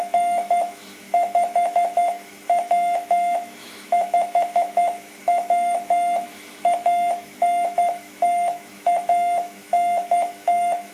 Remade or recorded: remade